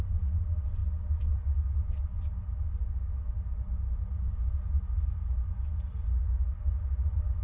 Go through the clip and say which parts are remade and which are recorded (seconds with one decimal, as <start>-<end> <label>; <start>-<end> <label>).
0.0-7.4 recorded